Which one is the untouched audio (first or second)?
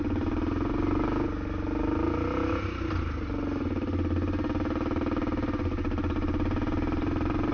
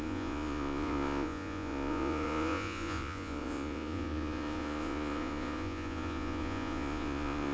first